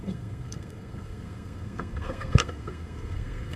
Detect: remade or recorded remade